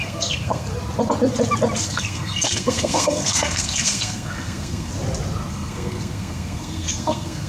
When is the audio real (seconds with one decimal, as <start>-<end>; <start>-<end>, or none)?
0.7-1.8; 4.9-5.5